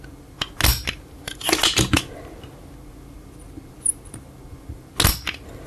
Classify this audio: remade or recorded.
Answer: recorded